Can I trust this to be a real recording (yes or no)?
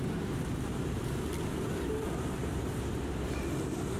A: no